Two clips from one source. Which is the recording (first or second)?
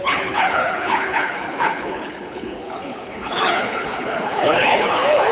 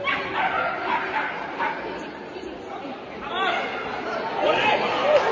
second